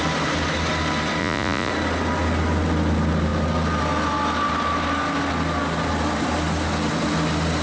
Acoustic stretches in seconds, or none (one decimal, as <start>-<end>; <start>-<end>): 0.0-1.2; 1.7-7.6